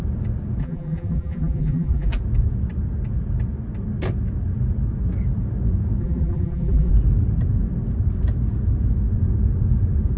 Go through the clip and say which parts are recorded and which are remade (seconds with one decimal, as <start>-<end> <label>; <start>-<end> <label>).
0.0-0.6 recorded; 0.6-2.2 remade; 2.2-6.0 recorded; 6.0-6.9 remade; 6.9-10.2 recorded